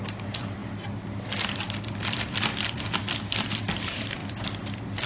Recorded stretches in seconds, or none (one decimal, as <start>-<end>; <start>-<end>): 0.6-1.6